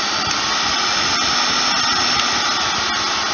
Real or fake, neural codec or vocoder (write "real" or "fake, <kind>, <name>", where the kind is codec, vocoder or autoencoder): real